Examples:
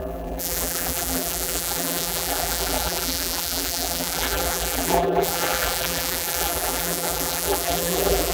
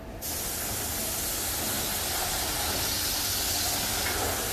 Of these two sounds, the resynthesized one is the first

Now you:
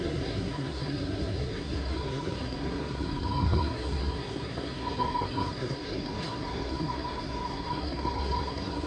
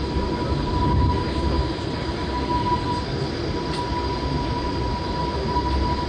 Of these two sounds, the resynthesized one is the first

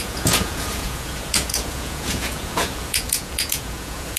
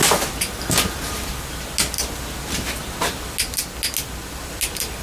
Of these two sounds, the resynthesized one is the first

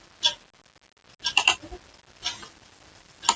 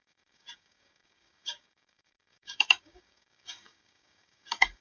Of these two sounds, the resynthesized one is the second